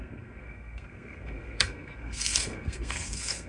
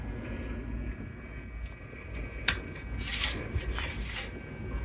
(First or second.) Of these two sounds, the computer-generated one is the first